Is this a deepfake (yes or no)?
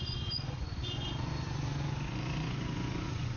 yes